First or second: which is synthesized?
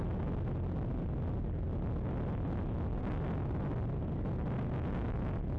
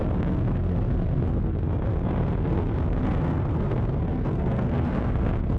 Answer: second